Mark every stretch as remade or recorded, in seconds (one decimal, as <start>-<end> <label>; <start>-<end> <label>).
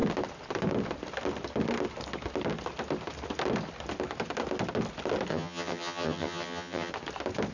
0.0-5.3 recorded; 5.3-6.9 remade; 6.9-7.5 recorded